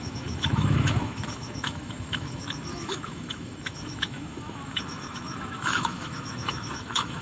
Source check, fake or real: fake